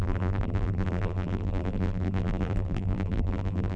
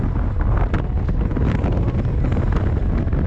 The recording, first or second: second